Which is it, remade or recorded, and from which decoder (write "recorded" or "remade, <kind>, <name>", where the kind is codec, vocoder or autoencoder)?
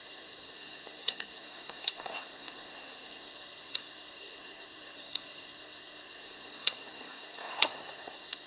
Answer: remade, codec, SNAC